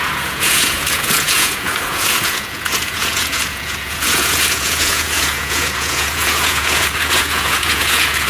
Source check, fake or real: fake